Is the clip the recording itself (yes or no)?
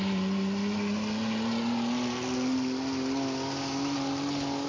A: yes